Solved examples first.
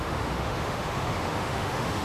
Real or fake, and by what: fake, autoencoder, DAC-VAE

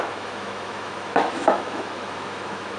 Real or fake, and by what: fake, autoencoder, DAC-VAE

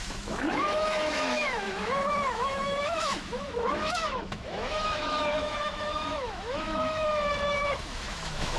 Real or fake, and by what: fake, autoencoder, DAC-VAE